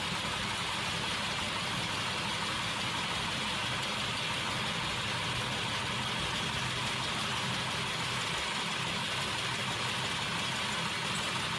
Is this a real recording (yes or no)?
yes